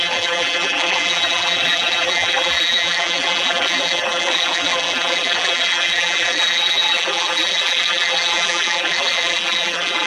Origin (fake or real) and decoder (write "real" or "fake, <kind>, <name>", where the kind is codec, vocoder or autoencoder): fake, vocoder, BigVGAN v2